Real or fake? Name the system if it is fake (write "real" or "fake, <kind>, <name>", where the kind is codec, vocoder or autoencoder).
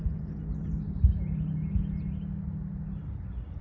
real